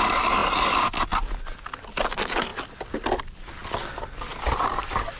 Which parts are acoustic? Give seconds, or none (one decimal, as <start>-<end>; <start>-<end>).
0.0-5.2